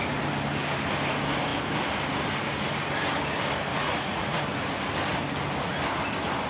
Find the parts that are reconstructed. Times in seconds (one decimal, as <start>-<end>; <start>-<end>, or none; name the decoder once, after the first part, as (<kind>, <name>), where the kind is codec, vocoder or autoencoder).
3.7-4.4 (vocoder, Vocos)